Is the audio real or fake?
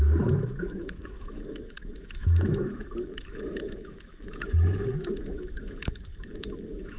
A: fake